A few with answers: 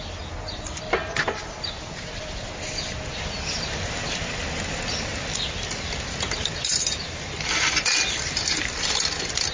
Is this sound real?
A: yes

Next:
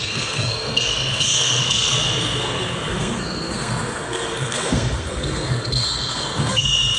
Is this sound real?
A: no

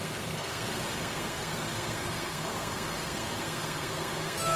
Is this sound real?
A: no